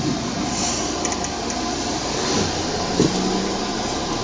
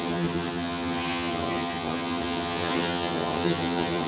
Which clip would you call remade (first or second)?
second